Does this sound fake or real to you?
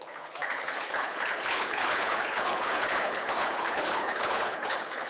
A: fake